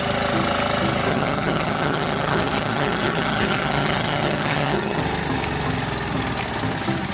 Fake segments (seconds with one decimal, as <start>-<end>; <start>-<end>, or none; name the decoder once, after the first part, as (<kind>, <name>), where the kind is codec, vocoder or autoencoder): 1.1-5.0 (vocoder, HiFi-GAN)